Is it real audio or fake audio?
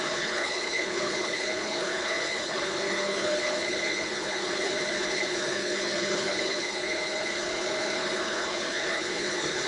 fake